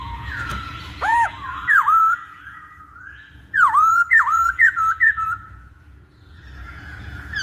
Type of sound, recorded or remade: remade